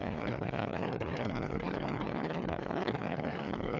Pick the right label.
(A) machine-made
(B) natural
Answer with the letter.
A